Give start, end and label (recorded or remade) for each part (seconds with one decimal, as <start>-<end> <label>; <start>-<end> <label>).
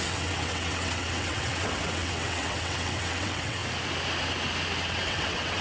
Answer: 0.0-3.6 remade; 3.6-4.8 recorded; 4.8-5.6 remade